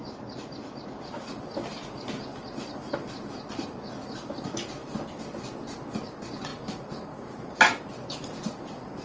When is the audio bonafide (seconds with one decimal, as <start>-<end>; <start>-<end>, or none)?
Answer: 0.0-9.0